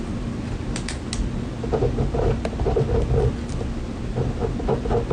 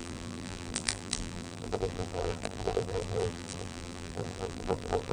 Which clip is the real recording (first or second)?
first